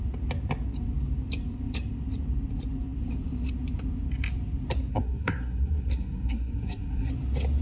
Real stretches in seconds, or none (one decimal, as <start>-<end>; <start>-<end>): 0.0-4.9; 7.1-7.6